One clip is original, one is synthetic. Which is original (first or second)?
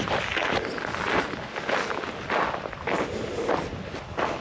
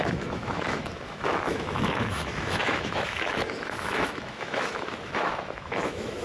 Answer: first